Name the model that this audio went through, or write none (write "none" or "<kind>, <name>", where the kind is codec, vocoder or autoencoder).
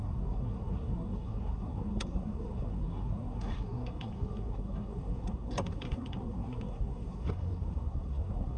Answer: codec, SNAC